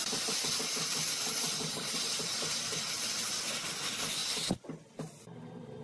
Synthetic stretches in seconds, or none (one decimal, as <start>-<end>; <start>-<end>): 0.0-4.2; 4.8-5.8